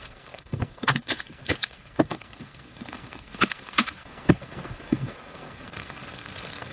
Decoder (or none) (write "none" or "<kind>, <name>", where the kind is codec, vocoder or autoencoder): codec, SNAC